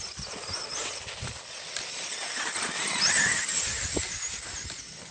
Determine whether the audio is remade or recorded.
recorded